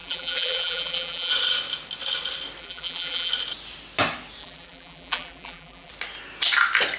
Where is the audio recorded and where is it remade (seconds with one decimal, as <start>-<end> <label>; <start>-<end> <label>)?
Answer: 0.0-1.3 remade; 1.3-2.6 recorded; 2.6-3.3 remade; 3.3-4.4 recorded; 4.4-5.9 remade; 5.9-7.0 recorded